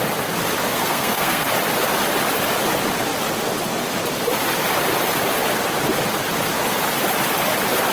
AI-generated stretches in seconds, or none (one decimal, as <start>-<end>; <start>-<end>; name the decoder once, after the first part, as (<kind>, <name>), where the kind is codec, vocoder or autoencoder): 0.7-1.5 (codec, SNAC)